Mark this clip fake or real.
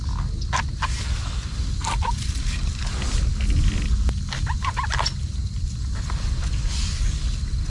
real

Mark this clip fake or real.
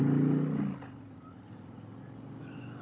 real